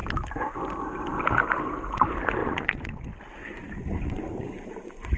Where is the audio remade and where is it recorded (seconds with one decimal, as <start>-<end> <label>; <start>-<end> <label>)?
0.0-2.4 recorded; 2.4-2.9 remade; 2.9-3.5 recorded; 3.5-5.2 remade